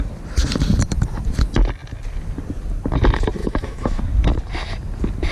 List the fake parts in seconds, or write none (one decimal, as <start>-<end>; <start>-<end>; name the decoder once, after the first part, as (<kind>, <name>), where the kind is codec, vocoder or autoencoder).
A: 3.4-4.0 (autoencoder, DAC-VAE)